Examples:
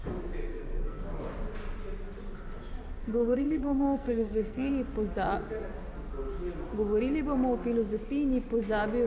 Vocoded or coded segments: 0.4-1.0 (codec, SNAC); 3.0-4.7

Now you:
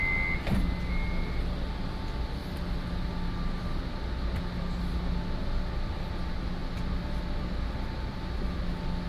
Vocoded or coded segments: none

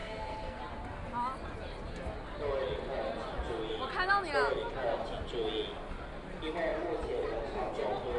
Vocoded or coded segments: 0.0-0.6 (codec, SNAC)